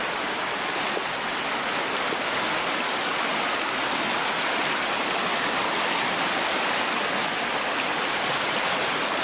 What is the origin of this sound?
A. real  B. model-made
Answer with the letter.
A